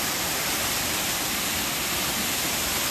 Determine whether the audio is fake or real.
fake